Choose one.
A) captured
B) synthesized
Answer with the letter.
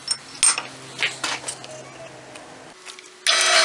A